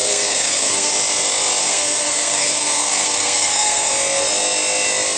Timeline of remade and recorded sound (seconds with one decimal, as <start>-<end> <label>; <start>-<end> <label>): 0.0-0.9 remade; 0.9-1.6 recorded; 1.6-3.9 remade; 3.9-5.2 recorded